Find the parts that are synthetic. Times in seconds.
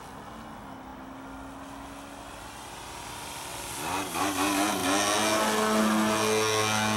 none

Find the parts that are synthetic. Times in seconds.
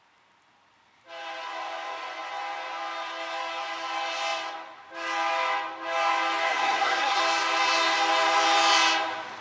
6.5-7.2 (codec, SNAC)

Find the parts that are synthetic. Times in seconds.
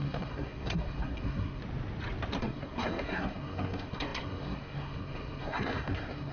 0.0-1.6 (codec, SNAC); 2.4-6.3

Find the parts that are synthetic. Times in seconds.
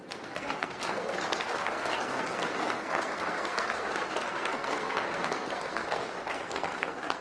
0.0-7.2 (codec, SNAC)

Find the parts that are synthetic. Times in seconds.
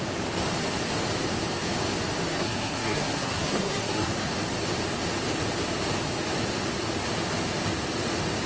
2.3-4.3 (codec, SNAC)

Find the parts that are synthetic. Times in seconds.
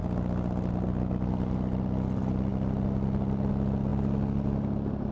none